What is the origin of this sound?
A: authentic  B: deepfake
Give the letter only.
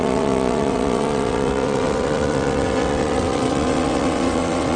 B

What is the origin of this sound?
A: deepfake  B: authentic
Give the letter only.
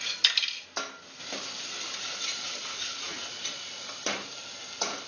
B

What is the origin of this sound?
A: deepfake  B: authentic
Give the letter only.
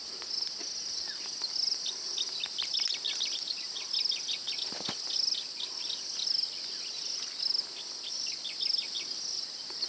B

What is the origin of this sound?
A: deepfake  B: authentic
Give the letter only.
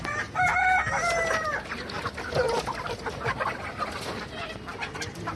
B